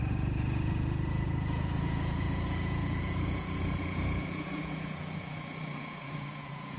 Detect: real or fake fake